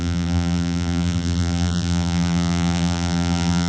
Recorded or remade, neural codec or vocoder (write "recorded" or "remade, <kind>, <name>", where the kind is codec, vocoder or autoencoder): remade, vocoder, BigVGAN v2